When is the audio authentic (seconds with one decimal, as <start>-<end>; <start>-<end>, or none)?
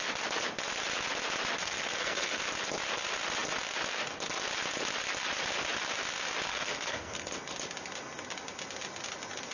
0.0-1.6; 2.4-6.5; 7.3-9.5